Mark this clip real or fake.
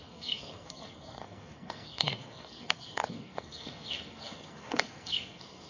fake